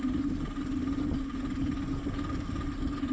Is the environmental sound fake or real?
real